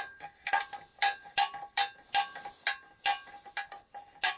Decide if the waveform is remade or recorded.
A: recorded